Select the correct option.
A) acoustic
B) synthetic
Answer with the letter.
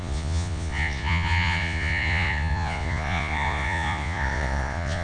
B